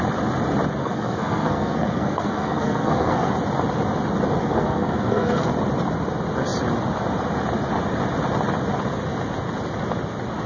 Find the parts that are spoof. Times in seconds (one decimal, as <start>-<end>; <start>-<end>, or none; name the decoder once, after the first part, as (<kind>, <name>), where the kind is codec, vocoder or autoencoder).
0.8-3.3 (codec, SNAC); 4.4-5.5